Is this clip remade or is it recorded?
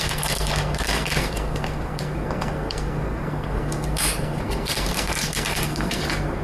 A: remade